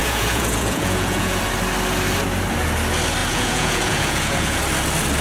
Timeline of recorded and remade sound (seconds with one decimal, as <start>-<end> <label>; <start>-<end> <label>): 0.0-1.4 remade; 1.4-3.2 recorded; 3.2-4.6 remade; 4.6-5.2 recorded